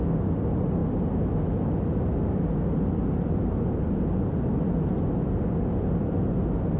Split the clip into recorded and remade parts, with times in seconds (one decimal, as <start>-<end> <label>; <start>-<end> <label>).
0.0-6.8 recorded

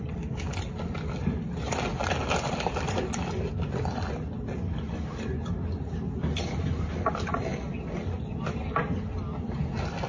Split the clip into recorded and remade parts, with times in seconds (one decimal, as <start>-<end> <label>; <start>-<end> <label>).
0.0-10.1 recorded

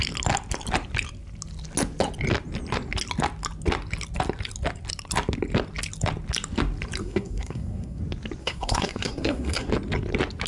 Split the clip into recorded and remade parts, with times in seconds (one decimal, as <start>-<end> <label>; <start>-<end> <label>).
0.0-7.0 recorded; 7.0-8.0 remade; 8.0-8.4 recorded; 8.4-9.7 remade; 9.7-10.5 recorded

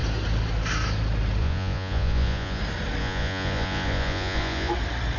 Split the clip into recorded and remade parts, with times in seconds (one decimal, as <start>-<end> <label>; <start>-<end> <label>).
0.0-1.4 recorded; 1.4-2.6 remade; 2.6-3.0 recorded; 3.0-4.7 remade; 4.7-5.2 recorded

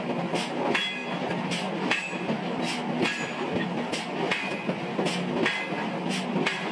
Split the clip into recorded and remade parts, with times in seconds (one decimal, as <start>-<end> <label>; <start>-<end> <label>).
0.0-6.7 recorded